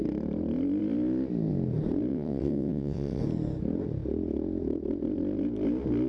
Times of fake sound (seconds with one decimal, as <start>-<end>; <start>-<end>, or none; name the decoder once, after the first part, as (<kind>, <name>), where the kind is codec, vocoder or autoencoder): 2.1-3.2 (vocoder, WaveNeXt)